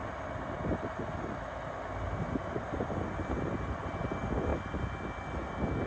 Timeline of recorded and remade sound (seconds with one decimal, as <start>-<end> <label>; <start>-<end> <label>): 0.0-5.9 recorded